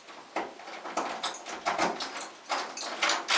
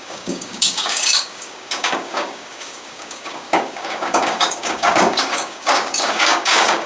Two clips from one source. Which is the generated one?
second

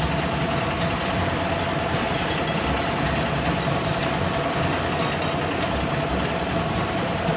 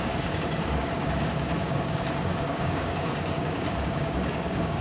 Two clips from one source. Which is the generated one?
second